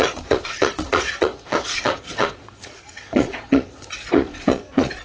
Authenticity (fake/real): fake